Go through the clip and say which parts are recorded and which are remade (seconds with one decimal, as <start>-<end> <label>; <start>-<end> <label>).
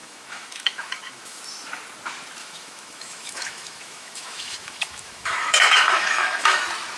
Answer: 0.0-1.4 remade; 1.4-2.4 recorded; 2.4-6.6 remade; 6.6-7.0 recorded